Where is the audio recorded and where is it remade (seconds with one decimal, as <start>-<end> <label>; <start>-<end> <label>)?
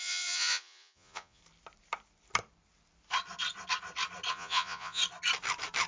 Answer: 0.0-1.4 remade; 1.4-4.3 recorded; 4.3-5.0 remade; 5.0-5.9 recorded